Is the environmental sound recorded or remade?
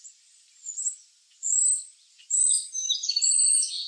recorded